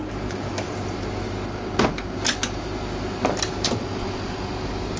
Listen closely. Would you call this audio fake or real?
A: real